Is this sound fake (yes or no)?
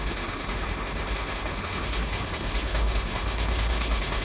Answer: yes